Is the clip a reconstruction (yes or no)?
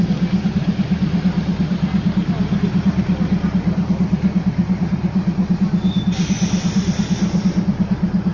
no